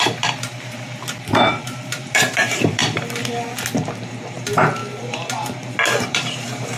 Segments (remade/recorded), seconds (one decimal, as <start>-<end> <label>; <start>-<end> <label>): 0.0-2.8 remade; 2.8-4.0 recorded; 4.0-4.8 remade; 4.8-6.0 recorded; 6.0-6.8 remade